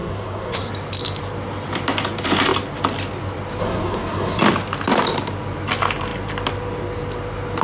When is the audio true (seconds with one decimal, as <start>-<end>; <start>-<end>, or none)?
0.7-3.6; 4.4-7.6